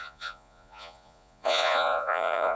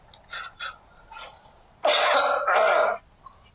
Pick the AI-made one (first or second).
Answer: first